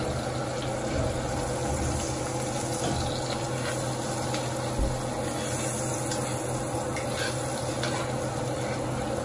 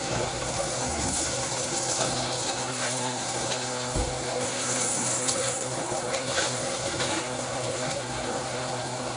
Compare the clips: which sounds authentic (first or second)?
first